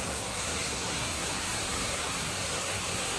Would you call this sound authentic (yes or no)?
no